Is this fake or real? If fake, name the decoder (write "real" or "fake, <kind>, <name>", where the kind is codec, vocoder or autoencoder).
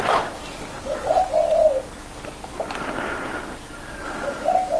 real